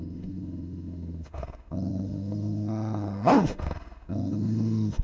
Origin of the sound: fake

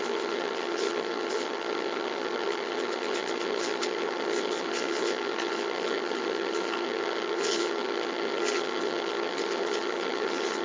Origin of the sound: fake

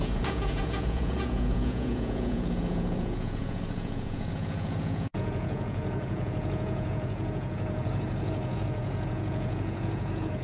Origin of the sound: fake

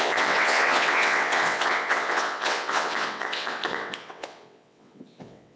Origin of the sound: fake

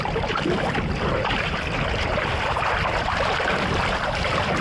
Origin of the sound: fake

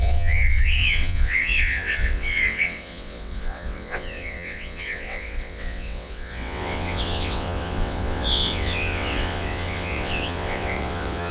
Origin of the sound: fake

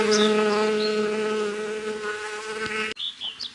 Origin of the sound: real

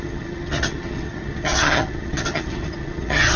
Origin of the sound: fake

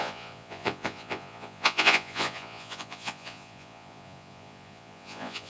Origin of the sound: fake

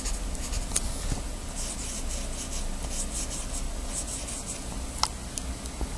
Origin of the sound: real